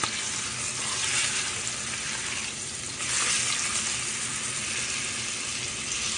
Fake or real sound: real